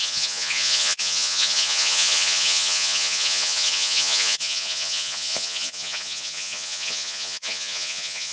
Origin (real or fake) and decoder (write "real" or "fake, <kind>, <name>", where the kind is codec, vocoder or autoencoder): fake, vocoder, Vocos